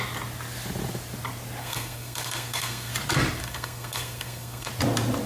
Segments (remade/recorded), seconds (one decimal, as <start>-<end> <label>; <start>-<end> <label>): 0.0-1.6 recorded; 1.6-2.9 remade; 2.9-3.4 recorded; 3.4-4.7 remade; 4.7-5.3 recorded